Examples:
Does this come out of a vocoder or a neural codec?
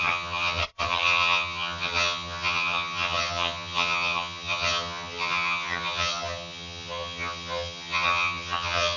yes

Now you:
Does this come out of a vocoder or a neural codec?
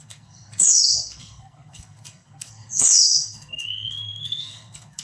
yes